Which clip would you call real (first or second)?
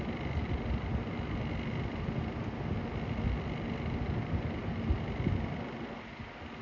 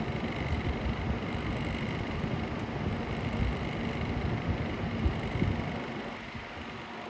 first